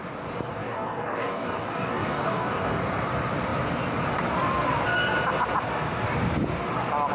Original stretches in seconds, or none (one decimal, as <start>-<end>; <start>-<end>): 0.0-0.6; 2.8-7.1